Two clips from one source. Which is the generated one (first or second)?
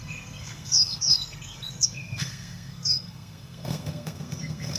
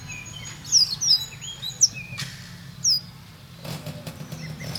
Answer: first